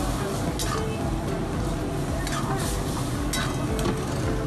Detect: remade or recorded recorded